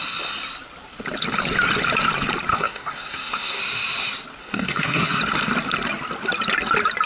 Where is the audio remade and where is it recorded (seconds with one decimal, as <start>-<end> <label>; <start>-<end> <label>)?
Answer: 0.0-2.5 recorded; 2.5-3.6 remade; 3.6-4.4 recorded; 4.4-5.2 remade; 5.2-7.1 recorded